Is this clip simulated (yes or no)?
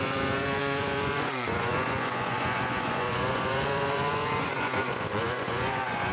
yes